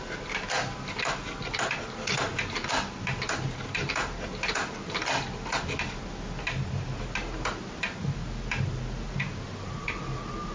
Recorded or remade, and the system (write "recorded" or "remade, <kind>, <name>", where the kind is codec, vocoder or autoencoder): recorded